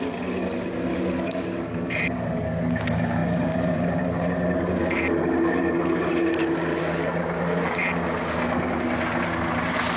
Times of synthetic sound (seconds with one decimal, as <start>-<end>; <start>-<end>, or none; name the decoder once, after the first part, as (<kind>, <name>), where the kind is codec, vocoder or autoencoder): 0.9-2.7 (codec, DAC); 6.7-7.8

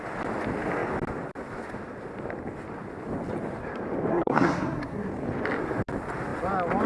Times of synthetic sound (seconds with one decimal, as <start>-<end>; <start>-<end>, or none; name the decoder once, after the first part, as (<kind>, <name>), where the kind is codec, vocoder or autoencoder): 4.1-5.1 (codec, SNAC)

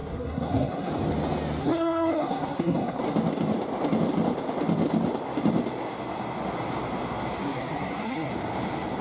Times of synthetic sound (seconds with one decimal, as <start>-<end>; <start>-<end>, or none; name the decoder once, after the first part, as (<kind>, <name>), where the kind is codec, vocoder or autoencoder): 0.0-0.9 (codec, SNAC); 1.6-3.0; 7.4-8.3

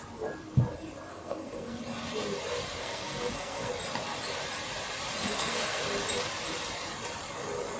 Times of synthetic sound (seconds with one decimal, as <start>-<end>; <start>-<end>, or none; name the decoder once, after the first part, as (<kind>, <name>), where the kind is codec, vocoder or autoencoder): 1.1-1.8 (codec, SNAC); 2.8-3.7; 5.2-5.8

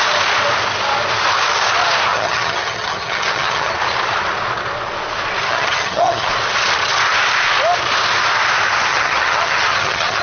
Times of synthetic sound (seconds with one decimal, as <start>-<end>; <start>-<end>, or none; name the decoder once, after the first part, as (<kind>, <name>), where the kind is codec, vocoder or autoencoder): 2.1-3.7 (vocoder, HiFi-GAN); 5.4-6.3; 8.9-10.2

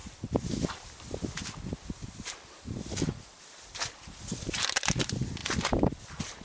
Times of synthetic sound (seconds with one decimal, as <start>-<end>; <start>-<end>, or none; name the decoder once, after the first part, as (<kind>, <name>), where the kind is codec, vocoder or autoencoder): none

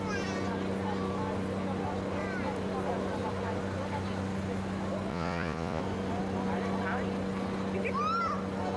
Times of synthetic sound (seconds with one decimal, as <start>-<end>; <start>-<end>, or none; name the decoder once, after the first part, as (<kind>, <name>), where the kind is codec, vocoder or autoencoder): 5.1-5.8 (vocoder, Vocos)

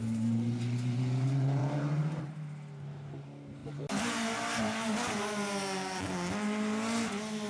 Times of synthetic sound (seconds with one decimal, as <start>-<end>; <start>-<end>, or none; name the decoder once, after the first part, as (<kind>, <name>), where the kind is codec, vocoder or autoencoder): none